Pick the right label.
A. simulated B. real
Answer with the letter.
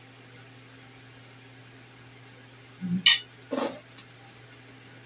B